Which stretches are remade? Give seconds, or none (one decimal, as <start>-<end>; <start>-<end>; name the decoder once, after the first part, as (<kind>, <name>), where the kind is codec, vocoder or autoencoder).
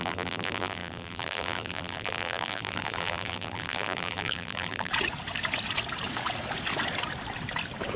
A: 0.0-4.9 (vocoder, BigVGAN v2)